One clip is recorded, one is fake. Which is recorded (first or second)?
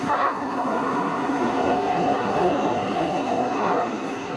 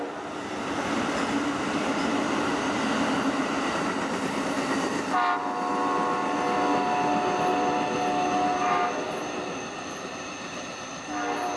second